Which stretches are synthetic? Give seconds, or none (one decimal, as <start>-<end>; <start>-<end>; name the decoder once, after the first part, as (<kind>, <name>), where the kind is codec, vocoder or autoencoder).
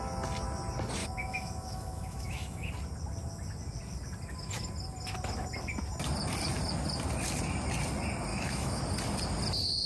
1.0-2.7 (autoencoder, DAC-VAE); 8.3-8.8